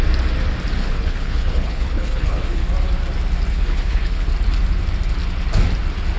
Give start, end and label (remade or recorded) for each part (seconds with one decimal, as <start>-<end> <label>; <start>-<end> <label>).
0.0-0.8 recorded; 0.8-2.6 remade; 2.6-3.5 recorded; 3.5-4.3 remade; 4.3-6.2 recorded